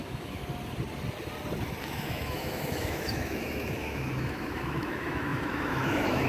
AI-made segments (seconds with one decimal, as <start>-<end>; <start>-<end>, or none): 0.0-0.4; 1.8-6.3